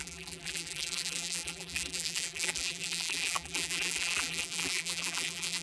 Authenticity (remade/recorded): remade